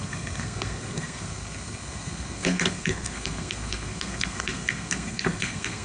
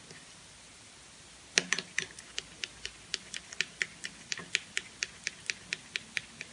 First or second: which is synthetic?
first